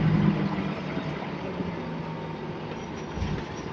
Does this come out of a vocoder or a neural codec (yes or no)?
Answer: no